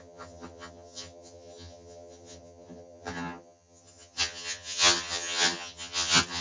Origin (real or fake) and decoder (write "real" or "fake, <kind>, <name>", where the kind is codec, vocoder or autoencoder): fake, vocoder, HiFi-GAN